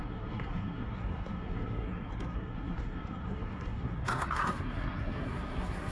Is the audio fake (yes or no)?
yes